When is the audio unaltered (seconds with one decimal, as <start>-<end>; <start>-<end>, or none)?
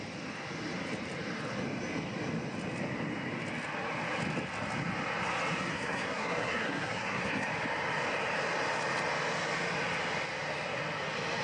0.0-5.7; 7.5-11.4